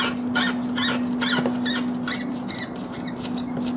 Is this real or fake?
real